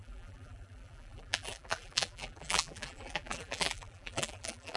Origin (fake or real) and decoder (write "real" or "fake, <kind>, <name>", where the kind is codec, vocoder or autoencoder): fake, vocoder, BigVGAN v2